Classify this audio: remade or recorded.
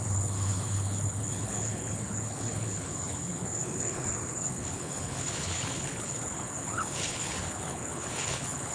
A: remade